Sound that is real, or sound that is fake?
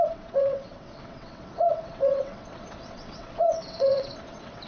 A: fake